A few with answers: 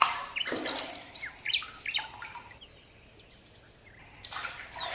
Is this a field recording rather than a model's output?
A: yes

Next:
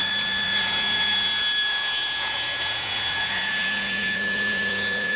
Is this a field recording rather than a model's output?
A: no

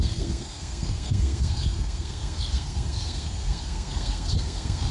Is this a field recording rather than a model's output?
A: no